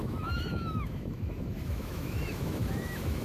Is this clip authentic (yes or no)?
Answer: no